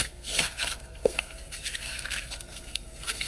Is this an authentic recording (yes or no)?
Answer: no